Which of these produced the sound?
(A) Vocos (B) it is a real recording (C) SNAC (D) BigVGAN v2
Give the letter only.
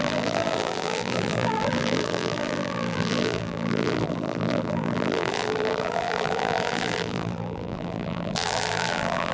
D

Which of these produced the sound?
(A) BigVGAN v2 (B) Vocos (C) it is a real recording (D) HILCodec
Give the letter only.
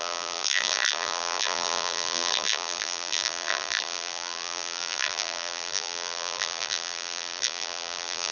A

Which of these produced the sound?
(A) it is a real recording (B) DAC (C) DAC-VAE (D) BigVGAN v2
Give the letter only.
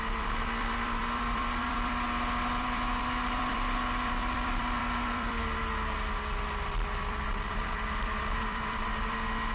D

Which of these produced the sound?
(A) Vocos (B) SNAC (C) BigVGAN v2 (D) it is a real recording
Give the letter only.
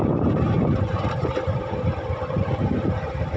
C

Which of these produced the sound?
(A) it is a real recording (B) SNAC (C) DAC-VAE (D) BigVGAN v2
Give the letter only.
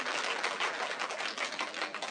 D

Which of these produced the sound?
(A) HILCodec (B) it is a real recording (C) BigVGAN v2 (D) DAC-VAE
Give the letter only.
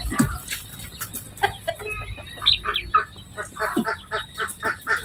B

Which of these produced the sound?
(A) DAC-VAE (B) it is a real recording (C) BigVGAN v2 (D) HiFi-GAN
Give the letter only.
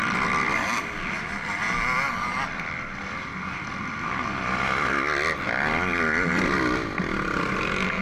C